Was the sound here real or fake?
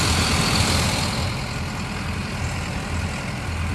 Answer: real